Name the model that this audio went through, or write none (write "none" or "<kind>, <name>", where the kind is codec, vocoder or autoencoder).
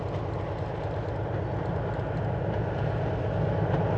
none